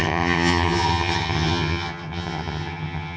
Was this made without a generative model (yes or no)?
no